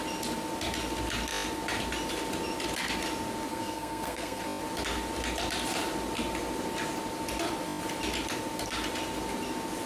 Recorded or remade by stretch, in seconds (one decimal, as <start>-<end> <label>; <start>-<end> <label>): 0.0-3.5 recorded; 3.5-4.4 remade; 4.4-9.9 recorded